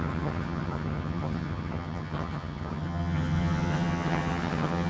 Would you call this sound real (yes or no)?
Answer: no